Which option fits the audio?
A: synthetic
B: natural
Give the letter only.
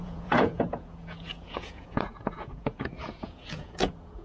A